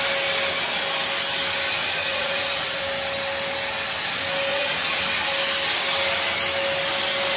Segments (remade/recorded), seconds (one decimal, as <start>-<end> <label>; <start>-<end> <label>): 0.0-1.8 recorded; 1.8-2.8 remade; 2.8-4.5 recorded; 4.5-5.0 remade; 5.0-7.4 recorded